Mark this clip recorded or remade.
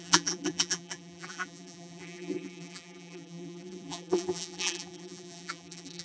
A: remade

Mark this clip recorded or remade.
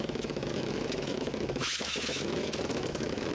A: remade